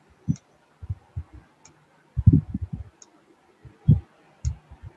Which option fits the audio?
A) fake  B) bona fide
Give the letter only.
B